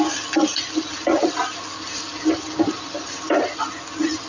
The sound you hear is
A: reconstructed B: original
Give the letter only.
B